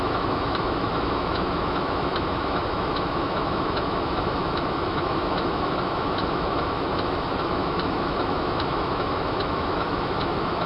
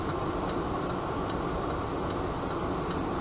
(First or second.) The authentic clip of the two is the second